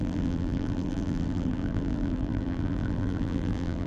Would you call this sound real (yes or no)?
no